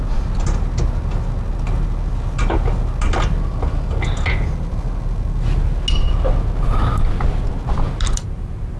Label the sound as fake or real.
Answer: real